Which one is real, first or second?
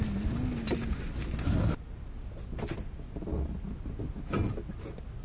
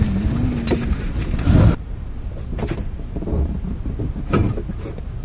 first